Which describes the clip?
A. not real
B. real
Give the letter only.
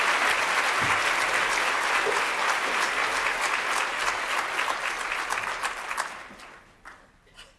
B